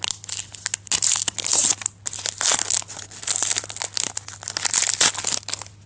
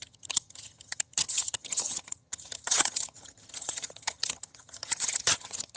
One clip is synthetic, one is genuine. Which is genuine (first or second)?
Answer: first